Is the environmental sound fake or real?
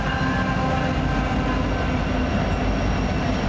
real